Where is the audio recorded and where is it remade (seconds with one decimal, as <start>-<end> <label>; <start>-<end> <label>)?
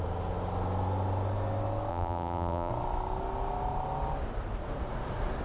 0.0-1.9 recorded; 1.9-2.7 remade; 2.7-5.4 recorded